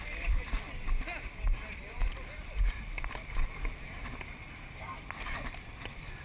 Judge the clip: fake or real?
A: real